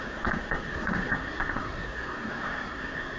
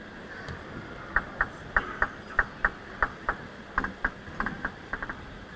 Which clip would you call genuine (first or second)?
second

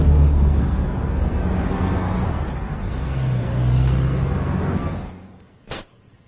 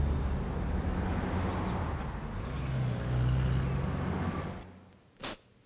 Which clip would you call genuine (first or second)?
second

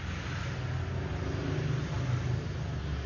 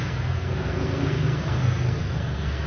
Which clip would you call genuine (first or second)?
first